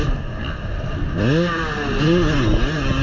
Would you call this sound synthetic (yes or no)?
no